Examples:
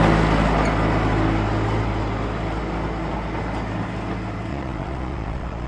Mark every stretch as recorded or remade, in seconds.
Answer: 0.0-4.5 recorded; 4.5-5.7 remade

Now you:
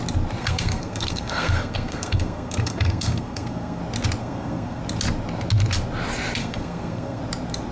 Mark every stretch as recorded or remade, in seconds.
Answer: 0.0-0.4 recorded; 0.4-3.8 remade; 3.8-4.2 recorded; 4.2-4.8 remade; 4.8-6.4 recorded; 6.4-7.2 remade; 7.2-7.7 recorded

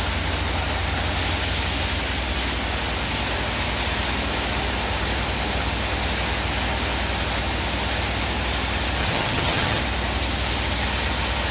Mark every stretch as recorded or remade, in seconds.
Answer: 0.0-9.0 recorded; 9.0-9.8 remade; 9.8-11.5 recorded

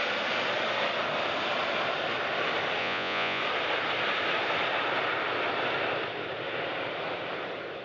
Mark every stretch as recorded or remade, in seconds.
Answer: 0.0-2.8 recorded; 2.8-3.4 remade; 3.4-7.8 recorded

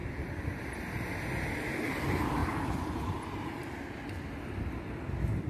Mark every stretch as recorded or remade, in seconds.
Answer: 0.0-0.6 remade; 0.6-5.5 recorded

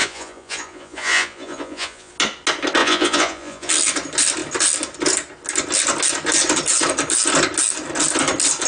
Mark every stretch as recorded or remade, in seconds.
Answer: 0.0-2.1 remade; 2.1-2.8 recorded; 2.8-3.7 remade; 3.7-8.7 recorded

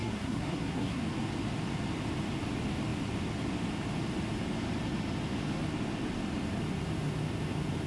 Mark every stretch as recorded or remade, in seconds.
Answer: 0.0-1.0 remade; 1.0-7.9 recorded

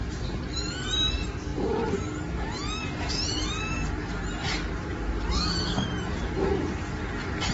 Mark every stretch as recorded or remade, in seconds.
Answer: 0.0-7.5 recorded